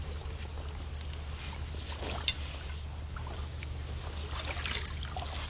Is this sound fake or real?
real